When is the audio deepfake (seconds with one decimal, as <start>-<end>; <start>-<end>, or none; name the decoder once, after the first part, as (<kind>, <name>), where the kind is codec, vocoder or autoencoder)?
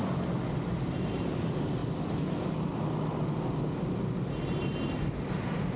0.5-1.8 (vocoder, BigVGAN v2); 5.3-5.8